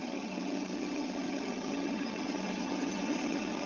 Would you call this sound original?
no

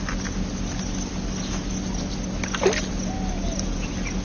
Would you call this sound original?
yes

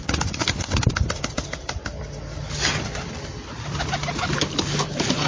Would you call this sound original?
yes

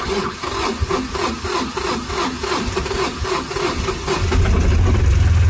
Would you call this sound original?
yes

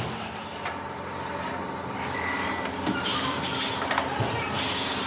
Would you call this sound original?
yes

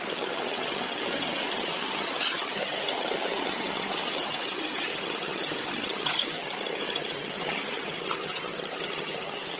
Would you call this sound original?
no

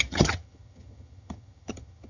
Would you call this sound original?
no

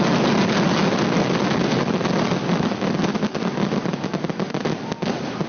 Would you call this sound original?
yes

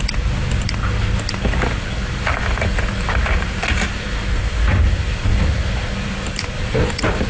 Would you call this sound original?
yes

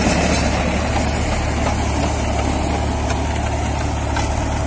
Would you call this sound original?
yes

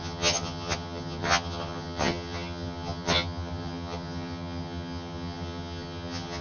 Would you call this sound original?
no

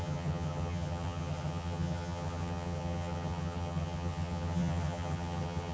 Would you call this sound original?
no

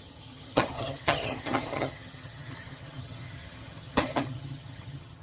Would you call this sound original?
no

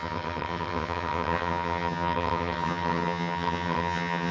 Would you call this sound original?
no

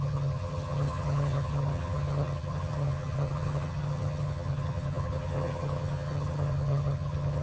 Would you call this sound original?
no